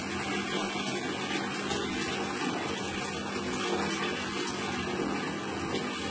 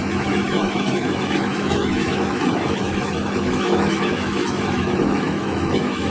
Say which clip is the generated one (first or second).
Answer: second